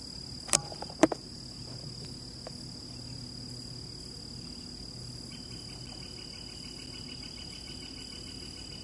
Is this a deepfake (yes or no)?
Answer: no